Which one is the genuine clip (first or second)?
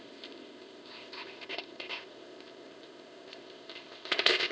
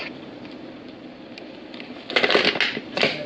second